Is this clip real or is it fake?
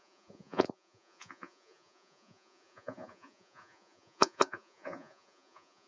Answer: fake